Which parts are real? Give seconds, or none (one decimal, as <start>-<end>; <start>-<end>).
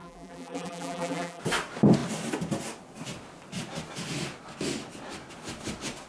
1.4-6.1